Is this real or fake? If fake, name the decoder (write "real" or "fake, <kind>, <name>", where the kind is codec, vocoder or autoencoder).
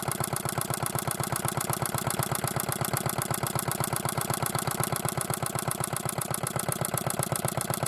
real